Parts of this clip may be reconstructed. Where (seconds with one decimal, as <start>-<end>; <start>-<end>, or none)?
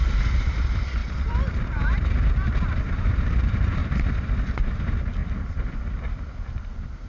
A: 0.0-1.0; 2.8-3.8; 4.8-5.2; 6.5-7.1